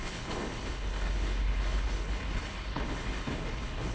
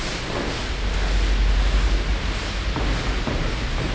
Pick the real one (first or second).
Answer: second